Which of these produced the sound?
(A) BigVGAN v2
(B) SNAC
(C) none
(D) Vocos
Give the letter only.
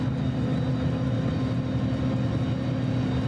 C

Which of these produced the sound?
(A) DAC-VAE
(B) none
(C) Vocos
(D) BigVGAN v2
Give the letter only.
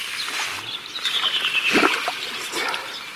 B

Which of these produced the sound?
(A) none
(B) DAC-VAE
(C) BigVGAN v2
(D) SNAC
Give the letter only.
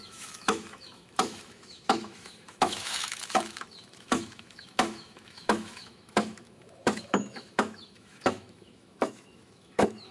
B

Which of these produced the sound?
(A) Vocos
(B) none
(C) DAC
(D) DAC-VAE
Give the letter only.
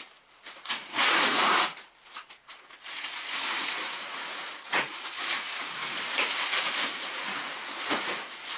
A